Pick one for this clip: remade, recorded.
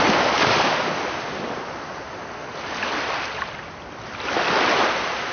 recorded